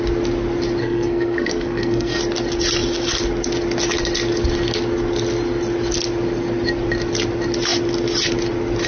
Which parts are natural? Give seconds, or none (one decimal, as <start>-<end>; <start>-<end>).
0.0-0.8; 2.2-8.9